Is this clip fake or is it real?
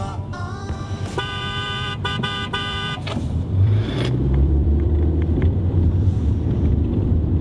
fake